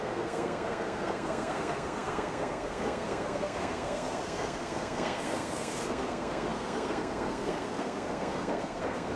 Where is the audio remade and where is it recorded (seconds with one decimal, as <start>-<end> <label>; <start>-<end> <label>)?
0.0-9.2 remade